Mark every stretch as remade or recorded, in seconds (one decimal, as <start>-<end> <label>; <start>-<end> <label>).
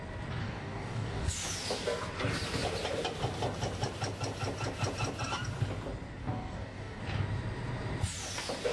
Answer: 0.0-0.4 recorded; 0.4-1.3 remade; 1.3-6.2 recorded; 6.2-7.0 remade; 7.0-8.7 recorded